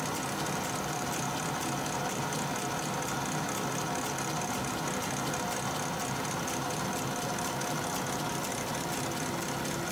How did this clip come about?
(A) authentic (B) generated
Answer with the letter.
A